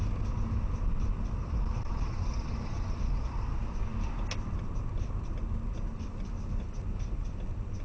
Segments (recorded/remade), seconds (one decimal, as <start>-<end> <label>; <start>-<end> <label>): 0.0-7.8 recorded